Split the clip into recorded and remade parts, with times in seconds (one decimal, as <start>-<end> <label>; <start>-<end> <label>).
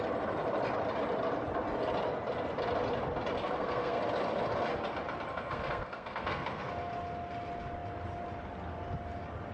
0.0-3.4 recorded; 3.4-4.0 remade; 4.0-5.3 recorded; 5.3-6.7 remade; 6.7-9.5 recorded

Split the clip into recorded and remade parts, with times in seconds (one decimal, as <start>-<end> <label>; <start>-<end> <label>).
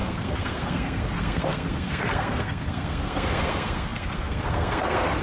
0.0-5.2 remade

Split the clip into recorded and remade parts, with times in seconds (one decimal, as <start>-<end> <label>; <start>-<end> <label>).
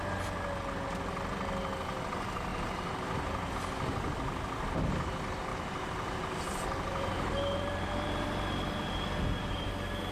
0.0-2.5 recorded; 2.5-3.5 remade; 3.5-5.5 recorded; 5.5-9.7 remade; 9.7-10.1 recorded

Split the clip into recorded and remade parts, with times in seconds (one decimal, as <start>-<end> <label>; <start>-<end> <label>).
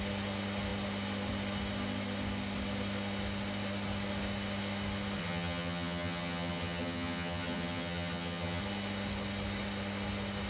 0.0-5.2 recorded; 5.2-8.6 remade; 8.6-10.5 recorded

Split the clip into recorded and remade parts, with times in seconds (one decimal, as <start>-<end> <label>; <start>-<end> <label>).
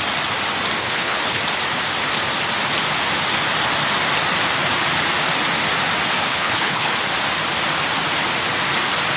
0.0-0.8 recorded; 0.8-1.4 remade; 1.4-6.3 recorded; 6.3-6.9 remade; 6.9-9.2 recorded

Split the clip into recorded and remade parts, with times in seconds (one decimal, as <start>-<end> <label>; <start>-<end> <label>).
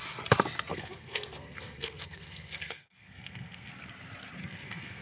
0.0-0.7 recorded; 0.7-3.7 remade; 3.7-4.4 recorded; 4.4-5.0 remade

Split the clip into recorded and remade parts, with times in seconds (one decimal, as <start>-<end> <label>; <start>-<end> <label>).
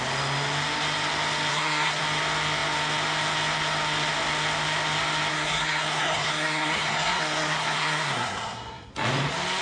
0.0-1.5 recorded; 1.5-2.0 remade; 2.0-5.3 recorded; 5.3-8.9 remade; 8.9-9.6 recorded